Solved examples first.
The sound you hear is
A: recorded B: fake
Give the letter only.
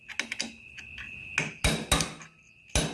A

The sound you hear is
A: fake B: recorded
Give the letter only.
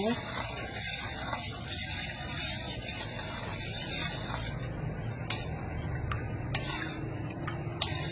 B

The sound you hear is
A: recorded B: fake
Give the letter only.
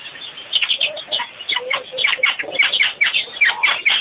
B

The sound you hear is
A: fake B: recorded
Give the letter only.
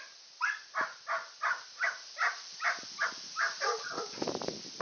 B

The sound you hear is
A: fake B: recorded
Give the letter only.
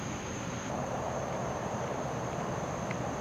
A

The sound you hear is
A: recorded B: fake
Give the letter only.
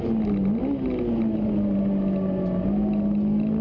A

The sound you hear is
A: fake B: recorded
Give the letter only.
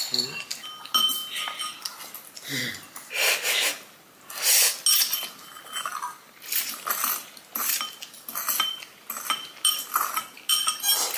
B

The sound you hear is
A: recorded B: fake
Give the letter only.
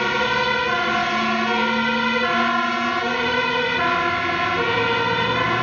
A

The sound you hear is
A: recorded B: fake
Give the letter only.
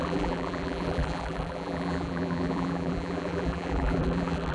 B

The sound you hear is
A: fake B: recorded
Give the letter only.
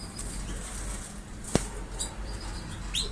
A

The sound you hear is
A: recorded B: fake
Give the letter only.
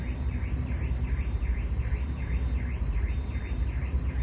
B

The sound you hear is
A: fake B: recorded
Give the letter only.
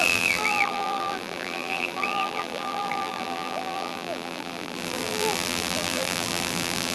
A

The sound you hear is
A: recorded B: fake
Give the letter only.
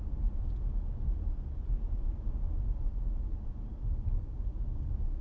A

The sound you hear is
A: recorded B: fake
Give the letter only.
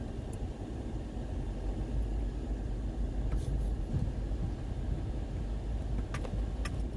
A